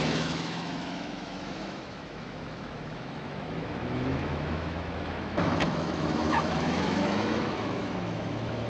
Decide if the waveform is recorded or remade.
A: remade